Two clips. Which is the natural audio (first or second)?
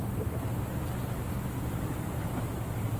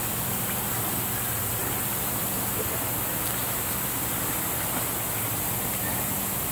second